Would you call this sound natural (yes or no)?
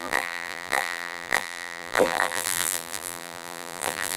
no